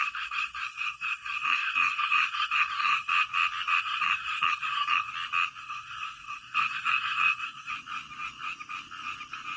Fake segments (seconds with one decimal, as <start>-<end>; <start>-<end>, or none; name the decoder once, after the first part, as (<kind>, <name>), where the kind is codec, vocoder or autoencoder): 0.0-3.1 (codec, SNAC); 3.8-5.1; 5.6-7.7